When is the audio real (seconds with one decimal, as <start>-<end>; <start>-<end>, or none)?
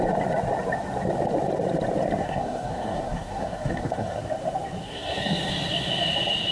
0.0-2.2; 4.2-4.8; 5.5-6.5